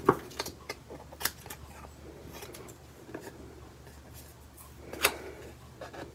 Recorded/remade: recorded